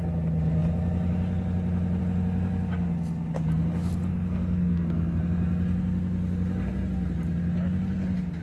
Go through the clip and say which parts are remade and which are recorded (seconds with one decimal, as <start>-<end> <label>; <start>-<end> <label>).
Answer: 0.0-4.1 recorded; 4.1-5.2 remade; 5.2-8.4 recorded